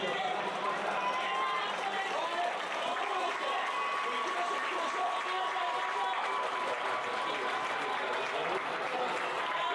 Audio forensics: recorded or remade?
recorded